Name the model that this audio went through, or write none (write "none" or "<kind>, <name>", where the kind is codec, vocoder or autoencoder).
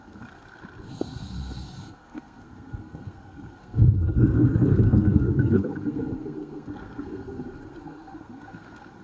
codec, SNAC